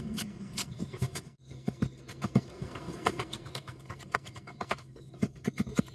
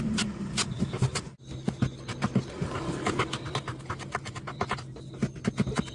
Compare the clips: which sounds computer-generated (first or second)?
first